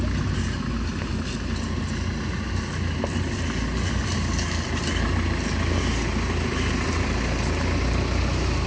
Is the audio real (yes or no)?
yes